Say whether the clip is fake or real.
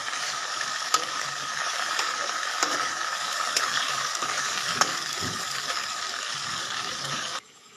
fake